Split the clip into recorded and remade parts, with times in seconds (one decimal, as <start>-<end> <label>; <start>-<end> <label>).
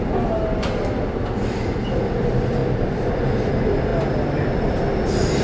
0.0-5.4 recorded